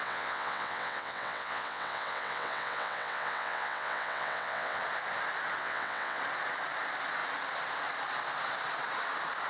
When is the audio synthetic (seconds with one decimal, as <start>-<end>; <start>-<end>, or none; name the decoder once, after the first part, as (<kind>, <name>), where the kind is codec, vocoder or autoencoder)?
0.0-4.8 (vocoder, WaveNeXt); 5.6-6.2